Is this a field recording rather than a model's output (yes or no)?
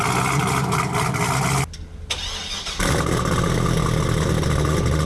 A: yes